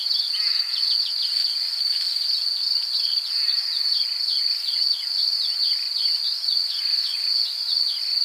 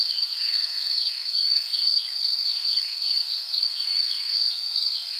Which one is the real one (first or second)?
first